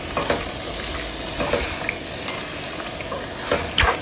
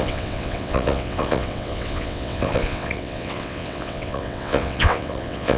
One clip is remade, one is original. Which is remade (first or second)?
second